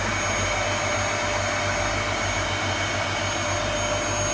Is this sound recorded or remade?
recorded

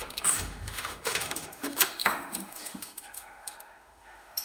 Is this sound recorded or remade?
remade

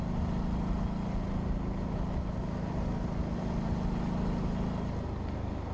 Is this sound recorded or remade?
recorded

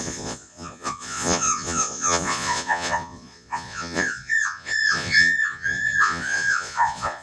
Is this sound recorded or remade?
remade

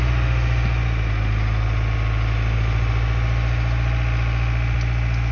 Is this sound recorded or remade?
recorded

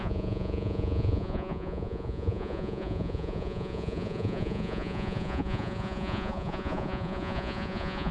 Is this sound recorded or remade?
remade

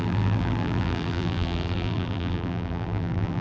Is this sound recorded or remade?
remade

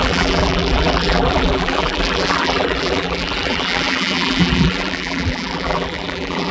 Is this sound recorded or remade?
remade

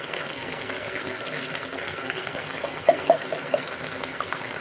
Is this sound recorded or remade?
remade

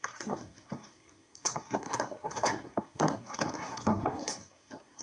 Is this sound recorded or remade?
remade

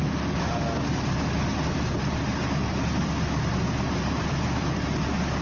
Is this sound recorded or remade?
recorded